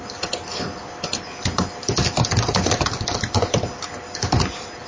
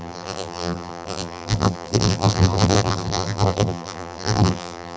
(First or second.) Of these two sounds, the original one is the first